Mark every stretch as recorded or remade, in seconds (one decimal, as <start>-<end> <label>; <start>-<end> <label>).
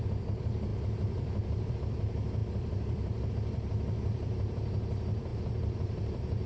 0.0-6.5 remade